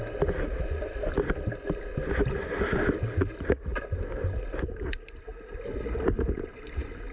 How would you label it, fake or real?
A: real